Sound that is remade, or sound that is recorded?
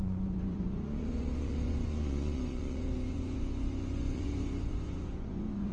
remade